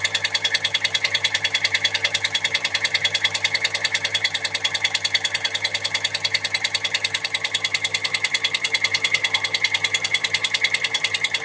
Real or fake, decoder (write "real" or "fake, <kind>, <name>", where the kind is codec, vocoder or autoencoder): real